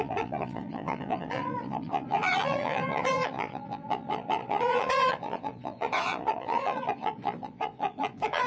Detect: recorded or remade remade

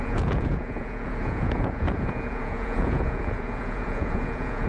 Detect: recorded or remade remade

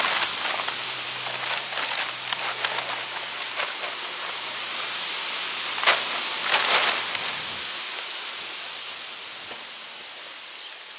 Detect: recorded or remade recorded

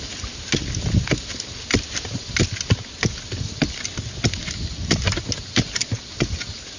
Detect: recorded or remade recorded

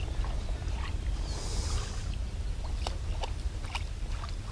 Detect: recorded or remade recorded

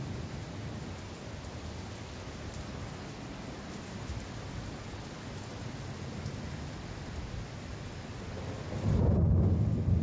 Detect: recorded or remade recorded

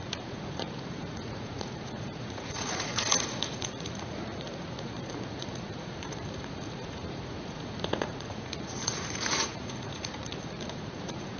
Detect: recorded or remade remade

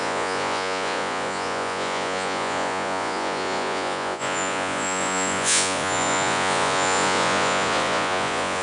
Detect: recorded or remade remade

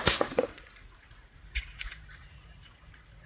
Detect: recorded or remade remade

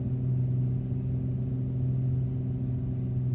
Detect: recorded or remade recorded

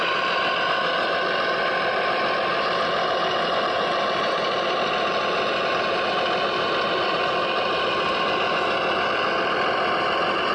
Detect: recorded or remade recorded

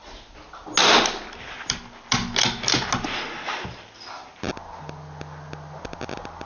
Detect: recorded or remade recorded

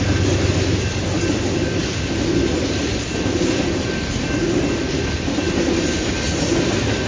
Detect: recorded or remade recorded